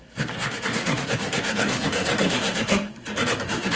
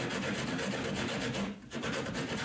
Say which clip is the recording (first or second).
second